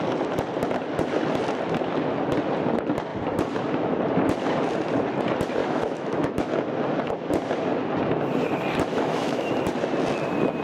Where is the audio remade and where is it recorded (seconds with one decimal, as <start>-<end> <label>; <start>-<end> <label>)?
0.0-5.6 recorded; 5.6-6.5 remade; 6.5-8.9 recorded; 8.9-9.5 remade; 9.5-10.6 recorded